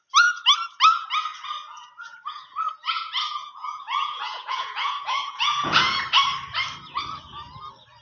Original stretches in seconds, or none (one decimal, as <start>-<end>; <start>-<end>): 0.0-1.7; 6.0-8.0